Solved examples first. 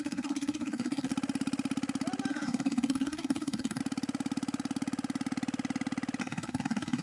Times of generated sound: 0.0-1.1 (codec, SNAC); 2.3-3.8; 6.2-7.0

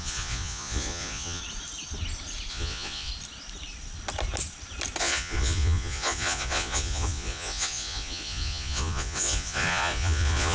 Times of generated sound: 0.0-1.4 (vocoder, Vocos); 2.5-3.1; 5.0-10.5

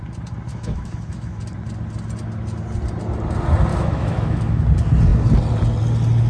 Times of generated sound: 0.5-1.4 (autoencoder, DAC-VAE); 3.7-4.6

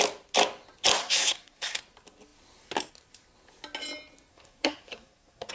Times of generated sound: 1.0-1.8 (codec, SNAC); 4.3-5.5

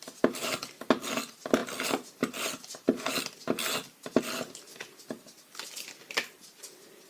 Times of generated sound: none

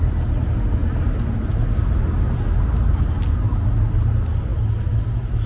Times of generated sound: none